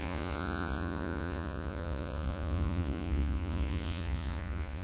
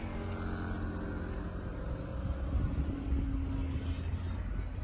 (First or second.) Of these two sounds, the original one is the second